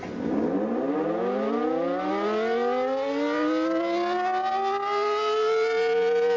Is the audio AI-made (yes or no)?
no